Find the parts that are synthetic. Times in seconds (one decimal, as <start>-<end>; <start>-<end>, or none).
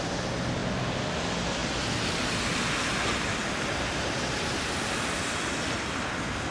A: none